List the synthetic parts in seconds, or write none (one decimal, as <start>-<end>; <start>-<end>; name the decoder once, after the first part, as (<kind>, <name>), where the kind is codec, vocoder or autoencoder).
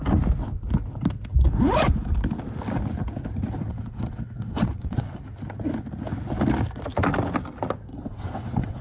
3.7-5.2 (vocoder, WaveNeXt); 7.9-8.8